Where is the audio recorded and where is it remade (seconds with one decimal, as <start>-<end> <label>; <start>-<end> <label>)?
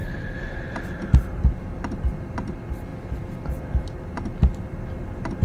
0.0-5.4 recorded